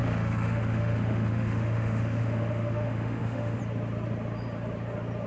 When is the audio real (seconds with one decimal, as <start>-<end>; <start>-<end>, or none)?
3.6-5.3